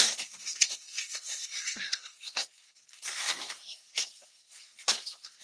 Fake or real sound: fake